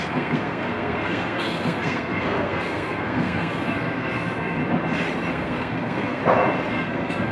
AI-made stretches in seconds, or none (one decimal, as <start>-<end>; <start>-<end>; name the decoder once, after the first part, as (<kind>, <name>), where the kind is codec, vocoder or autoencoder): 0.0-4.6 (codec, SNAC); 5.3-6.2; 6.7-7.3